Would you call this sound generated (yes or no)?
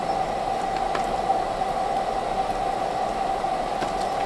no